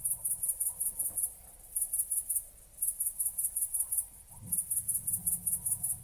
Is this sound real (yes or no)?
yes